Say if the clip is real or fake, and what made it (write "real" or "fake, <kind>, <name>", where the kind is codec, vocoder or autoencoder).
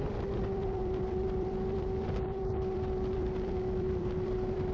fake, vocoder, BigVGAN v2